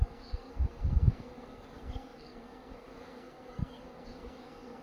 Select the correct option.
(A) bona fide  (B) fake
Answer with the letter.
B